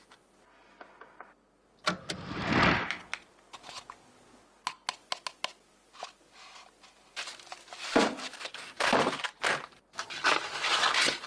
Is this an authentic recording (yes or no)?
yes